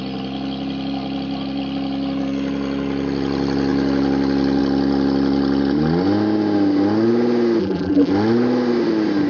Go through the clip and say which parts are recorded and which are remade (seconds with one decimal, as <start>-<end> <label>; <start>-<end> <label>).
0.0-7.6 recorded; 7.6-8.1 remade; 8.1-9.3 recorded